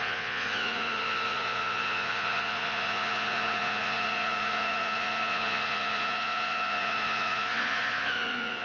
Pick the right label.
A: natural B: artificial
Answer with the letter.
B